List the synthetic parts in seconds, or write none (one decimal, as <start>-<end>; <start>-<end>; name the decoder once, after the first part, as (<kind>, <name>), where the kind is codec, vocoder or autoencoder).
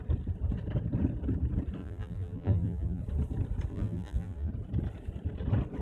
1.8-3.0 (vocoder, BigVGAN v2); 3.7-4.5